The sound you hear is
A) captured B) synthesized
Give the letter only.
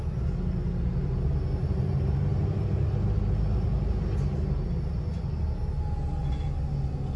A